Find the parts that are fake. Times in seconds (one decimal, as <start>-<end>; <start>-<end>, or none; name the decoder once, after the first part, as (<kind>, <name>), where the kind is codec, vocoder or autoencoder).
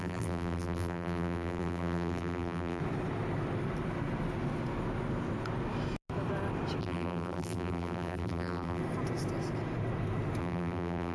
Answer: 0.0-2.8 (vocoder, BigVGAN v2); 6.8-8.8; 10.4-11.1